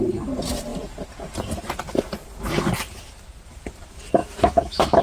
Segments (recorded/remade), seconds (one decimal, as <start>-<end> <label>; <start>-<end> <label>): 0.0-4.2 recorded; 4.2-5.0 remade